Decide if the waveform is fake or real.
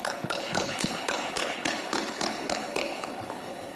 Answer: fake